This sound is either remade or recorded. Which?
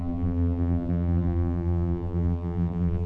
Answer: remade